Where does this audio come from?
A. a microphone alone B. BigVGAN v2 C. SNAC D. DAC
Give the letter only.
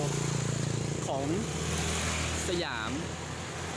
A